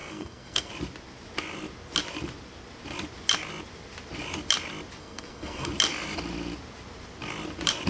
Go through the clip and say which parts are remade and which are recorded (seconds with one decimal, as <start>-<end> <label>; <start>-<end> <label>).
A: 0.0-0.7 remade; 0.7-5.0 recorded; 5.0-5.7 remade; 5.7-7.9 recorded